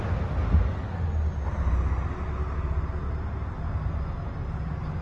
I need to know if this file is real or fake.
real